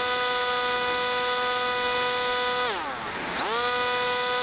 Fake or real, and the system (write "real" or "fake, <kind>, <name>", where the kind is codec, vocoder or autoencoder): real